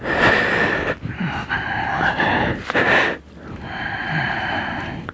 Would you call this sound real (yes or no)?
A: yes